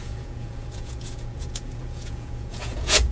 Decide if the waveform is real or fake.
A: fake